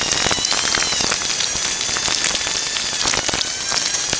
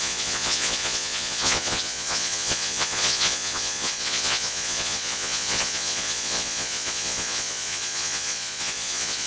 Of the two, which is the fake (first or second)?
second